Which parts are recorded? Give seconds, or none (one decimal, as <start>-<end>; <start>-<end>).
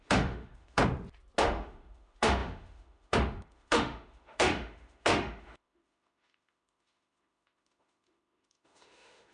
0.8-1.4